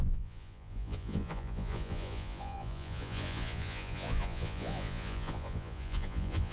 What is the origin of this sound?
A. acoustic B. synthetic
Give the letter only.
B